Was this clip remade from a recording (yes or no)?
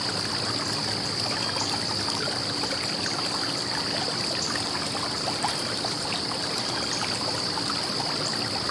no